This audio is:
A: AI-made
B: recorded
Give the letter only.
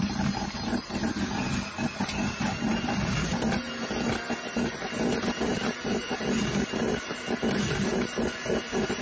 B